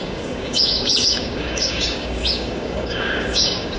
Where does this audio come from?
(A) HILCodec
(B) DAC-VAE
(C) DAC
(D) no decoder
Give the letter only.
C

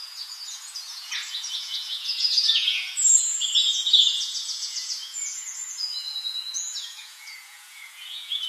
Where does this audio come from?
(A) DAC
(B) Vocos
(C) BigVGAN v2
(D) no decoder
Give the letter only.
B